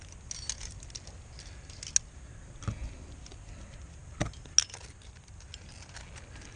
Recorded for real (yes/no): yes